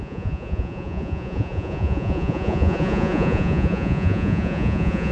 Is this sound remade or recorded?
remade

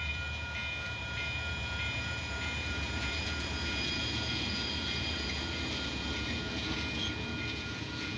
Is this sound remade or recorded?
remade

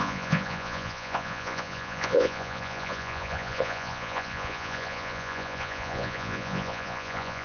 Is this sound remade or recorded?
remade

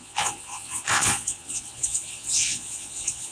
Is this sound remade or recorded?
remade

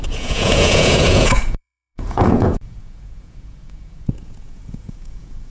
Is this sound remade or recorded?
remade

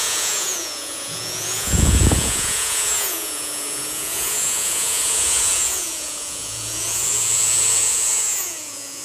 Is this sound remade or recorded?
remade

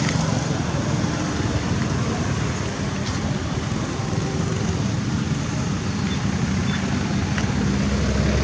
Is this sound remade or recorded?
recorded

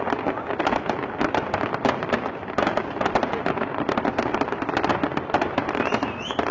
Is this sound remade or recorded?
recorded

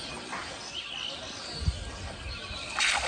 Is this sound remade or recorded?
recorded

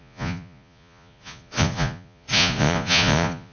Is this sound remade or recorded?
remade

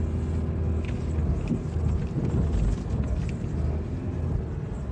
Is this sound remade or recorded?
recorded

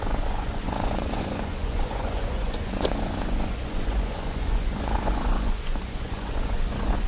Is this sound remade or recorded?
remade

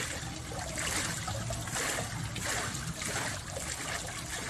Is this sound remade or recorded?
recorded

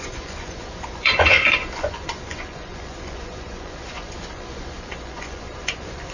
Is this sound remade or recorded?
remade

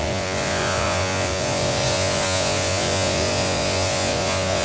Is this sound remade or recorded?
remade